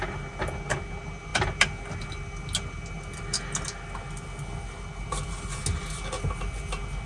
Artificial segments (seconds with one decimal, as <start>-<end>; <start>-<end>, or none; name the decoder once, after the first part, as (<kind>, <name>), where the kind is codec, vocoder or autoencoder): none